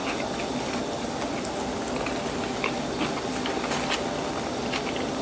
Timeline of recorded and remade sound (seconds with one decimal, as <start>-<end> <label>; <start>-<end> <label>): 0.0-5.2 recorded